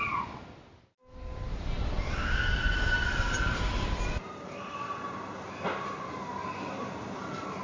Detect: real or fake real